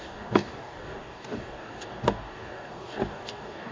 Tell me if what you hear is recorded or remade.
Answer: remade